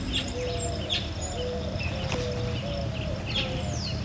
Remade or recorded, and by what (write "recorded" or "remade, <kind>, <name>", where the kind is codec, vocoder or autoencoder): recorded